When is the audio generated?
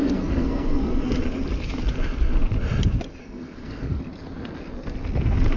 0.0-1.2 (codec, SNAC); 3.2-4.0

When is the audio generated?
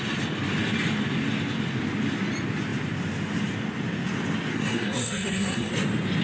4.5-5.7 (codec, SNAC)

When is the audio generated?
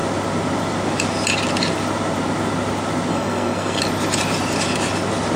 3.1-3.8 (codec, SNAC)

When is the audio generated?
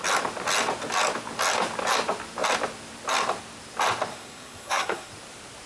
4.1-5.1 (codec, SNAC)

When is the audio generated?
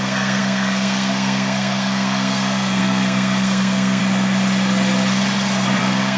0.0-4.0 (codec, SNAC); 5.8-6.2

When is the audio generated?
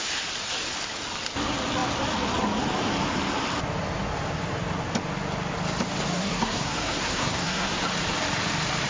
6.2-7.8 (codec, SNAC)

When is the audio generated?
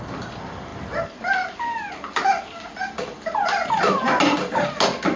none